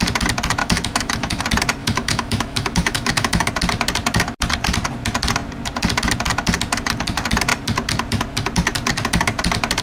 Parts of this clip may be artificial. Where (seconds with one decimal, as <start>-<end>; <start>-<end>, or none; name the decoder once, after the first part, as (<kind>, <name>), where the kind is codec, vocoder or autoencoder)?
0.6-1.4 (autoencoder, DAC-VAE); 1.8-3.5